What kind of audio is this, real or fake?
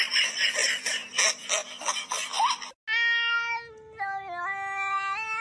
real